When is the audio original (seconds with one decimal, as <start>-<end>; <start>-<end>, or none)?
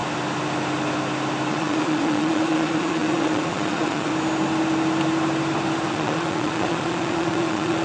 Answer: 0.0-1.5; 4.1-5.9